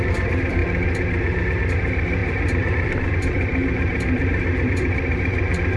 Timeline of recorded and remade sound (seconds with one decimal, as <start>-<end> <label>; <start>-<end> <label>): 0.0-0.6 remade; 0.6-1.7 recorded; 1.7-5.8 remade